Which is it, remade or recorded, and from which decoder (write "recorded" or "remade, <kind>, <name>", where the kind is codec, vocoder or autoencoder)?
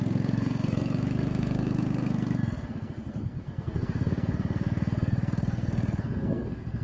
remade, codec, SNAC